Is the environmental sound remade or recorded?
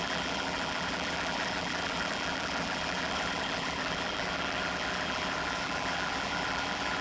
remade